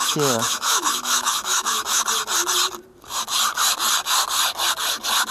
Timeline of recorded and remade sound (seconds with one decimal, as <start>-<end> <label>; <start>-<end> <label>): 0.0-2.0 remade; 2.0-5.3 recorded